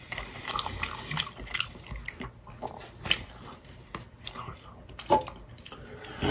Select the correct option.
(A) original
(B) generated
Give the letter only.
A